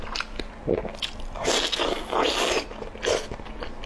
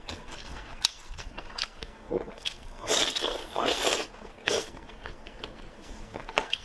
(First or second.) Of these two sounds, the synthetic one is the second